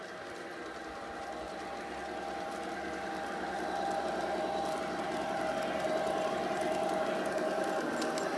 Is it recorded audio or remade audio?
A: recorded